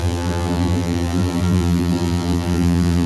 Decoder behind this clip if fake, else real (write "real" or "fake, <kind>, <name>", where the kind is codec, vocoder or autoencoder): fake, vocoder, BigVGAN v2